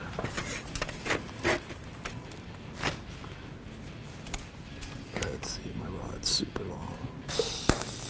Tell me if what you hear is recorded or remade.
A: recorded